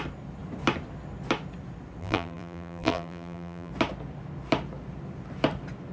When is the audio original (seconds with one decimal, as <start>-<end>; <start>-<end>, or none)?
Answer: 0.0-2.0; 3.7-5.9